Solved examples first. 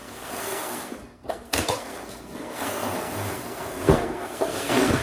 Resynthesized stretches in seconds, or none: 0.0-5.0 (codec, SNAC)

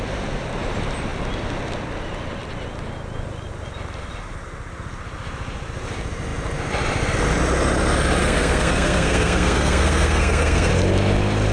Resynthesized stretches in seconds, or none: 8.2-10.7 (codec, SNAC)

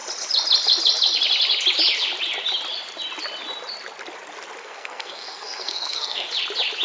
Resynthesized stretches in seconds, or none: 4.6-6.3 (codec, SNAC)